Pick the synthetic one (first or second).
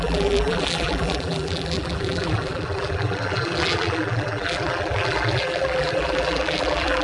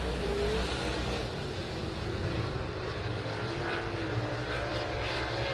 first